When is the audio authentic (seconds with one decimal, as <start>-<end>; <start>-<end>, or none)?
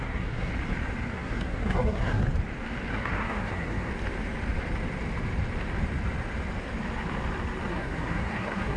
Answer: 0.5-1.1; 2.2-2.9; 3.9-7.7